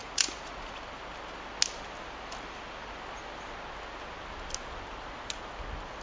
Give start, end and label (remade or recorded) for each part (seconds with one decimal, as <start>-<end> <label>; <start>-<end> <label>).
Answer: 0.0-0.6 remade; 0.6-6.0 recorded